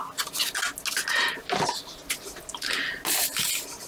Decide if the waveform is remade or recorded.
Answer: recorded